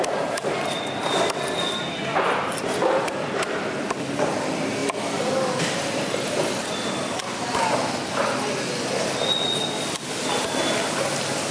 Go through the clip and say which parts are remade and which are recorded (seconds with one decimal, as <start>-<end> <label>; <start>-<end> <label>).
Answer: 0.0-11.5 recorded